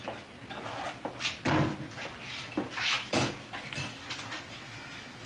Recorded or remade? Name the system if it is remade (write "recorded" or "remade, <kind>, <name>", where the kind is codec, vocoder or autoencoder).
recorded